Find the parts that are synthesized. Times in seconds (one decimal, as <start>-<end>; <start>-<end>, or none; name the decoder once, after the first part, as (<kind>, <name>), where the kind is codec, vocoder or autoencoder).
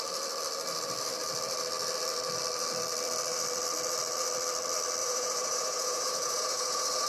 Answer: 5.0-7.1 (vocoder, Vocos)